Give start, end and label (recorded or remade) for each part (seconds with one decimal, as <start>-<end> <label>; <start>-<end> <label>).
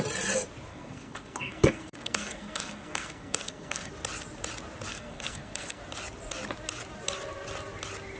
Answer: 0.0-0.7 recorded; 0.7-3.9 remade; 3.9-4.9 recorded; 4.9-5.8 remade; 5.8-8.2 recorded